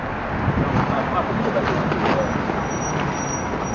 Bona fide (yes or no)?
yes